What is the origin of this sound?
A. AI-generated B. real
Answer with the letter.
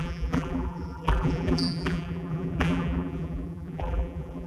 A